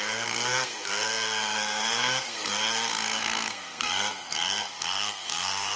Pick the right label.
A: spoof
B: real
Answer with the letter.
A